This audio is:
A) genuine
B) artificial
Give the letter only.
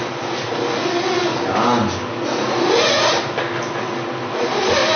A